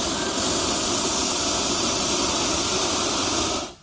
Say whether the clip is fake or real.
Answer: real